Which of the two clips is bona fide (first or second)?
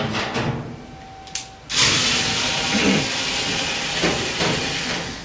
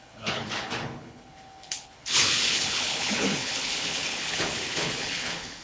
first